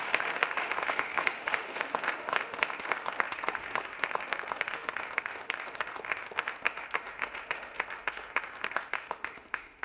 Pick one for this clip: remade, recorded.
remade